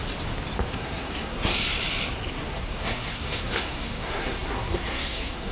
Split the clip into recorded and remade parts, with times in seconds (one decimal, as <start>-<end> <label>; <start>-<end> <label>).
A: 0.0-0.7 recorded; 0.7-1.5 remade; 1.5-2.3 recorded; 2.3-5.5 remade